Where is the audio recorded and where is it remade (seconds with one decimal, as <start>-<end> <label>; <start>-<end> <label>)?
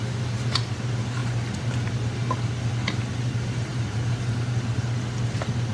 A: 0.0-5.7 recorded